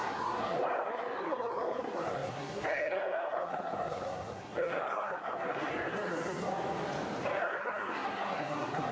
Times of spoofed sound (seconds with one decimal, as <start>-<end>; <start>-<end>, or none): 0.0-6.5; 7.4-8.9

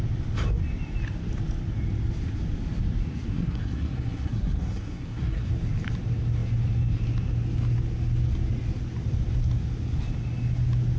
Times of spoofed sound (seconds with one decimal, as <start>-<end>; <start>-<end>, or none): 3.3-5.5

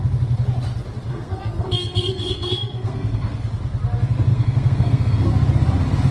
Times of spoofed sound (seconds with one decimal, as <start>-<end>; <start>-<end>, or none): 1.1-3.3; 4.3-5.3

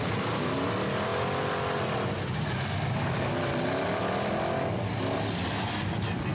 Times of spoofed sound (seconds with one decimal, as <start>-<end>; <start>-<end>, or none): none

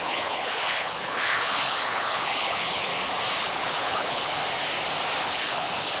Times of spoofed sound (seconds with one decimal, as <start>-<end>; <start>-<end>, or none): 0.0-2.9; 3.4-4.4; 5.2-6.0